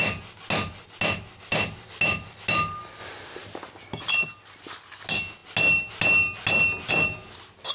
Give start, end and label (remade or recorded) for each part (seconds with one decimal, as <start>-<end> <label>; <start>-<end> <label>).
0.0-7.7 recorded